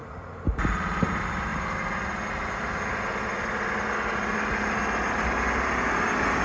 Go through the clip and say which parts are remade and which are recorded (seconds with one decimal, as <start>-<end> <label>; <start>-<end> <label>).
0.0-0.6 remade; 0.6-6.4 recorded